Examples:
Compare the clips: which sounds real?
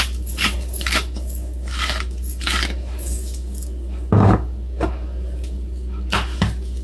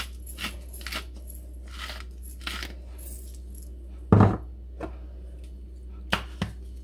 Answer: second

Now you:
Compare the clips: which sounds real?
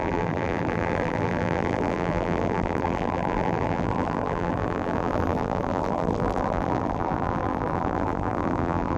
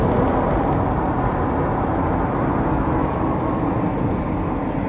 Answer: second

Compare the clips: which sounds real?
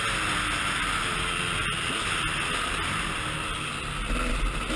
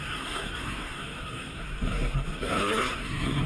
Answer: first